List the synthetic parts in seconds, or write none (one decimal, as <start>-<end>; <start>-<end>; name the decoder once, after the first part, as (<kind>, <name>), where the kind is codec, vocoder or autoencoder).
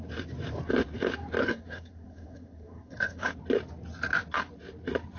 1.4-3.3 (codec, SNAC)